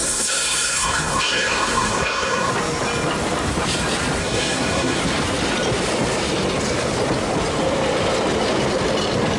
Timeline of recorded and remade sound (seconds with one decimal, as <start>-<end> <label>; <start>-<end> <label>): 0.0-2.5 remade; 2.5-4.2 recorded; 4.2-5.0 remade; 5.0-9.4 recorded

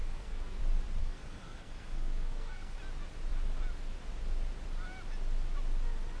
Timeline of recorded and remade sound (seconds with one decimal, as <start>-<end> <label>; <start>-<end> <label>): 0.0-0.6 remade; 0.6-1.0 recorded; 1.0-2.8 remade; 2.8-6.2 recorded

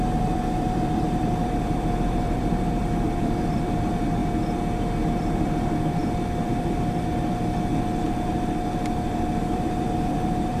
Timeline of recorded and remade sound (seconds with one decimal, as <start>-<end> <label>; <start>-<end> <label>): 0.0-4.2 remade; 4.2-5.0 recorded; 5.0-6.0 remade; 6.0-8.3 recorded; 8.3-10.6 remade

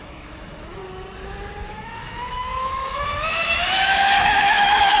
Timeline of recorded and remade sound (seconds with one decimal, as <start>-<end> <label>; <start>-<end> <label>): 0.0-0.8 remade; 0.8-1.7 recorded; 1.7-5.0 remade

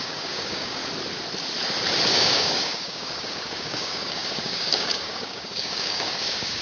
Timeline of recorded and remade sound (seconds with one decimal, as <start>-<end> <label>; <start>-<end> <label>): 0.0-0.8 remade; 0.8-2.1 recorded; 2.1-6.6 remade

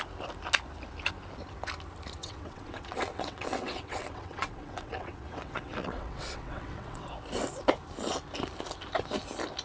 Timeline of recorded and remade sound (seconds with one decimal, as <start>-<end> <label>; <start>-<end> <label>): 0.0-2.2 recorded; 2.2-7.1 remade; 7.1-9.6 recorded

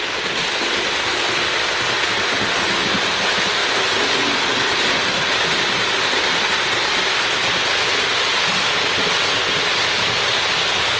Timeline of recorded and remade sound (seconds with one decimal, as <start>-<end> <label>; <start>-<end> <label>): 0.0-11.0 recorded

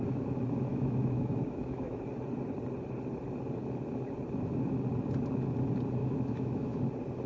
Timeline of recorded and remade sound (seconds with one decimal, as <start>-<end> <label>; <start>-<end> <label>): 0.0-0.7 recorded; 0.7-2.0 remade; 2.0-6.0 recorded; 6.0-6.8 remade; 6.8-7.3 recorded